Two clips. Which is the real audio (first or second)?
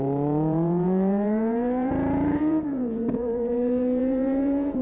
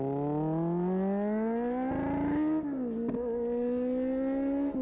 second